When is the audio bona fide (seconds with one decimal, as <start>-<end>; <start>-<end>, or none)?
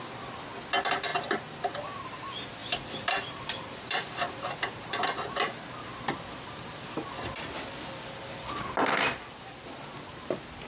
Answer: 0.0-2.6; 4.9-10.7